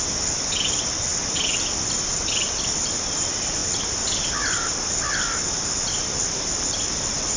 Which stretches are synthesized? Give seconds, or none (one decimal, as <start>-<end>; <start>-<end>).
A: 0.0-1.1; 2.6-3.6; 4.3-7.4